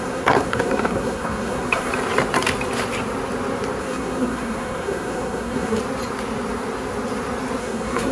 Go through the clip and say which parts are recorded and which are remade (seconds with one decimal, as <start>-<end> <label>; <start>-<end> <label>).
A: 0.0-1.9 remade; 1.9-3.8 recorded; 3.8-5.8 remade; 5.8-7.6 recorded; 7.6-8.1 remade